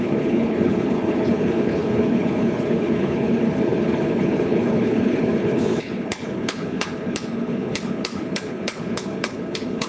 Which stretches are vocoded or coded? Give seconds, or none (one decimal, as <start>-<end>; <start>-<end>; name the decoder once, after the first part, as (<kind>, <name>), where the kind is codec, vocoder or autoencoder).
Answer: 0.0-9.9 (codec, HILCodec)